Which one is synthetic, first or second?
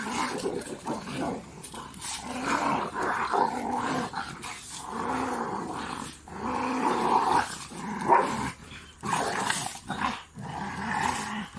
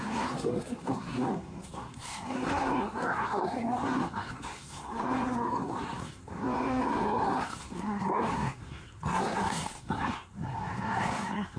second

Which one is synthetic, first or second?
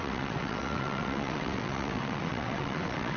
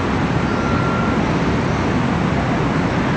first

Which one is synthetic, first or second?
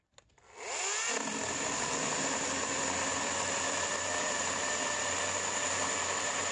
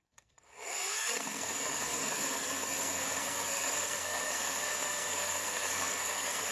second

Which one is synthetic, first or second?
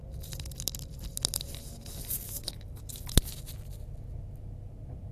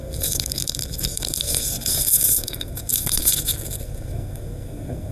second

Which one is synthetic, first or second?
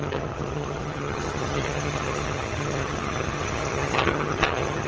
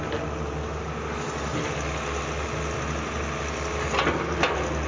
first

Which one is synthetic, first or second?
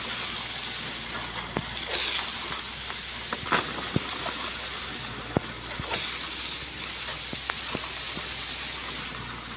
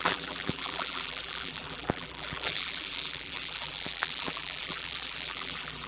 second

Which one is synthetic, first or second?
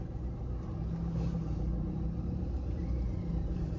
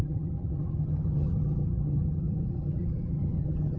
second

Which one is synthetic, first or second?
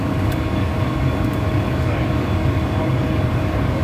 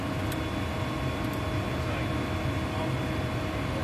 first